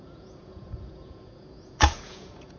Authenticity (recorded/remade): remade